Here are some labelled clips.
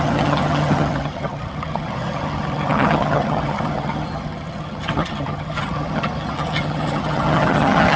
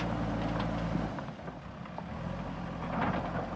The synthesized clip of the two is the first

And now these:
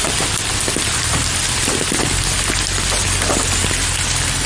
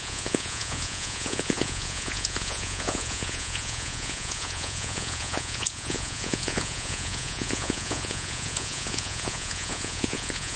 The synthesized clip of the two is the second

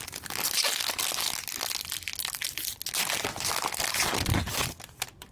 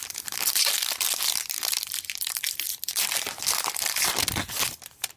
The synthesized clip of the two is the second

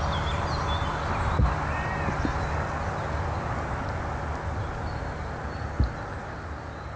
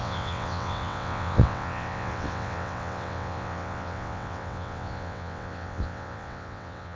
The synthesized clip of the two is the second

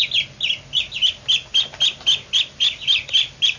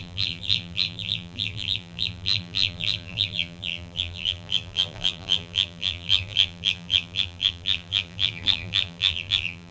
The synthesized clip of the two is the second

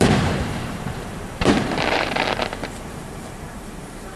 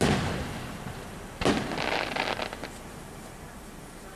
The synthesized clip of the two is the first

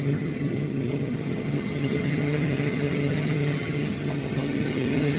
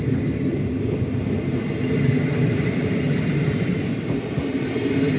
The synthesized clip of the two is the first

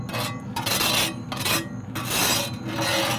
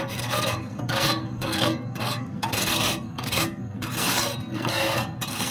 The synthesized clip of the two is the second